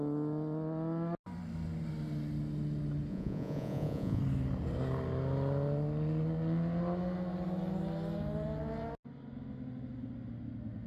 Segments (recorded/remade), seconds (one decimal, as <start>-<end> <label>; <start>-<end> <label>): 0.0-3.1 recorded; 3.1-4.2 remade; 4.2-10.9 recorded